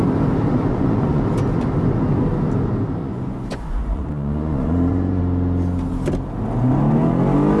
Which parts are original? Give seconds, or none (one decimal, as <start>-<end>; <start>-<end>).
0.0-0.7; 1.2-3.0; 5.2-7.6